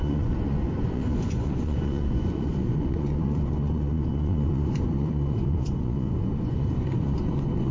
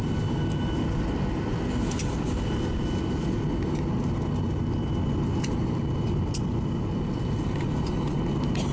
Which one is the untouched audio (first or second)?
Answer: second